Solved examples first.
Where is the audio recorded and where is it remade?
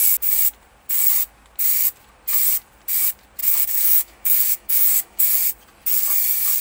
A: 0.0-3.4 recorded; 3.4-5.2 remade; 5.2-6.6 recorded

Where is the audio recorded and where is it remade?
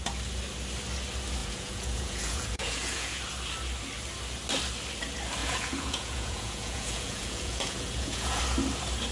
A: 0.0-1.4 recorded; 1.4-3.2 remade; 3.2-5.4 recorded; 5.4-8.4 remade; 8.4-9.1 recorded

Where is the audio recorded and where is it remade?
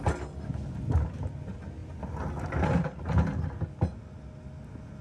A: 0.0-5.0 recorded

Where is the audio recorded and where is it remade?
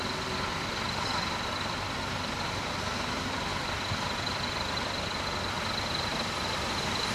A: 0.0-3.5 recorded; 3.5-7.1 remade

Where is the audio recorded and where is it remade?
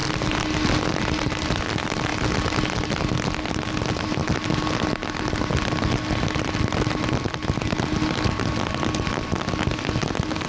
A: 0.0-10.5 recorded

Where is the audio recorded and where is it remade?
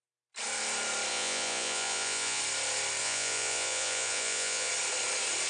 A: 0.0-1.1 recorded; 1.1-2.4 remade; 2.4-3.0 recorded; 3.0-4.7 remade; 4.7-5.5 recorded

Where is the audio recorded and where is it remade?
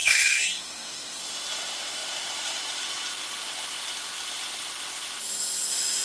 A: 0.0-1.2 remade; 1.2-6.0 recorded